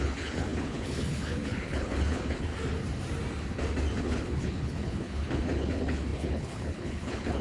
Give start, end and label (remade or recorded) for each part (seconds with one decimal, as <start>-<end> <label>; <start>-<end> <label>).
0.0-2.5 remade; 2.5-4.0 recorded; 4.0-7.4 remade